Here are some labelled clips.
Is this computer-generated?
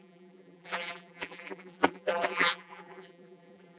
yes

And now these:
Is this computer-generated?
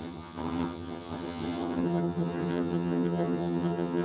yes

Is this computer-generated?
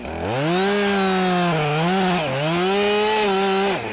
no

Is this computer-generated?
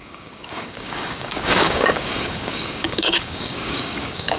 yes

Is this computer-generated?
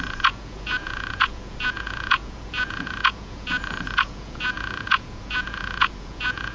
yes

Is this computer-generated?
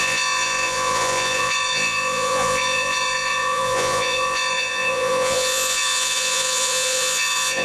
yes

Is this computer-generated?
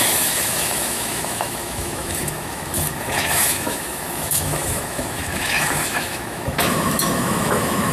yes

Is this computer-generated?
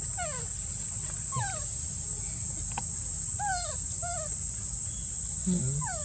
no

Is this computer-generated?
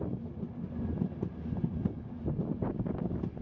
no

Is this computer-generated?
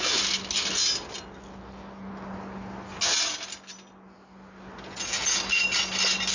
no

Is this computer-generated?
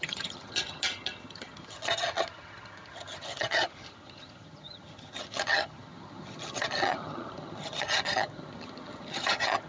yes